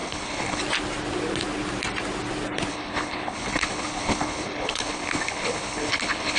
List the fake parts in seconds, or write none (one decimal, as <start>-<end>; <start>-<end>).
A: 0.0-0.6; 2.7-6.4

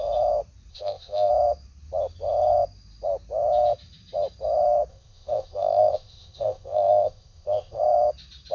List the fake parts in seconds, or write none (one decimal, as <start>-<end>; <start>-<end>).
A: 0.7-1.3; 4.9-7.8

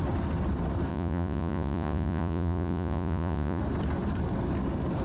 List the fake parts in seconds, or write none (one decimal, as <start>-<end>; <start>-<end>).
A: 0.9-3.6

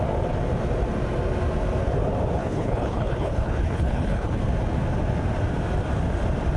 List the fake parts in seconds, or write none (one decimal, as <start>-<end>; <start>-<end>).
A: 2.4-4.4

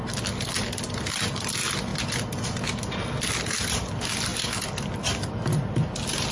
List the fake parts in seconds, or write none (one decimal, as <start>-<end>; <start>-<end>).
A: none

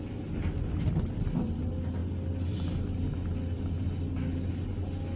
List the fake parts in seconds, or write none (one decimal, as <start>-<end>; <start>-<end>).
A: none

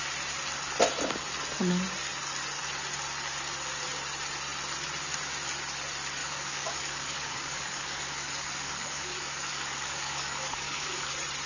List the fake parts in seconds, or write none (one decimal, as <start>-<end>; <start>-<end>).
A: 6.2-11.1

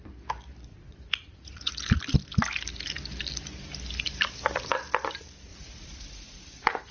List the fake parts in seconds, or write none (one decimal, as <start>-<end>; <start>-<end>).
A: 0.7-1.7; 5.5-6.9